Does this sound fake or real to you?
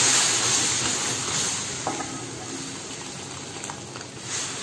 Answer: real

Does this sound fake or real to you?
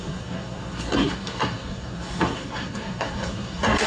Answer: fake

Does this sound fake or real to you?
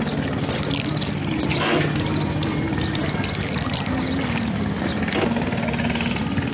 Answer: real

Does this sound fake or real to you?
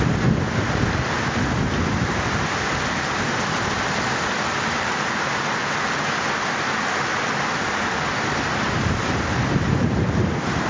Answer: real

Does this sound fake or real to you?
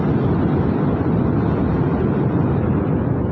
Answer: real